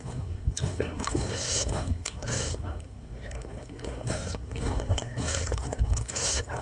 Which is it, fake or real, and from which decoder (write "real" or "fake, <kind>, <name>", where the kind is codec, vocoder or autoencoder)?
fake, codec, SNAC